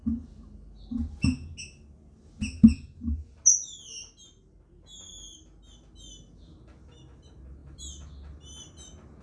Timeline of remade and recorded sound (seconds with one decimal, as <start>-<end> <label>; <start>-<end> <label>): 0.0-9.2 recorded